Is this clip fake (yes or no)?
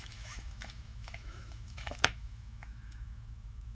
yes